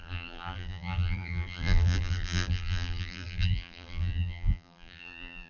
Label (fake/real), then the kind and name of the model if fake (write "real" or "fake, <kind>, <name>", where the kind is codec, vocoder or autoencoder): fake, vocoder, BigVGAN v2